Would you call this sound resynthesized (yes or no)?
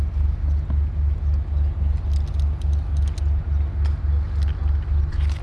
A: no